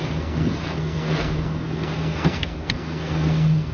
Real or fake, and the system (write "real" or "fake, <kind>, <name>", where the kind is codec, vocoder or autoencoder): fake, codec, SNAC